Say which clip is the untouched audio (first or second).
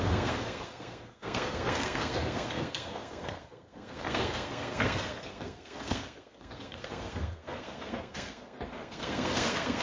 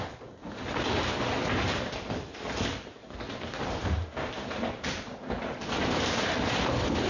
second